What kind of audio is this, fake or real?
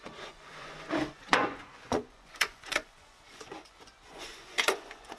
fake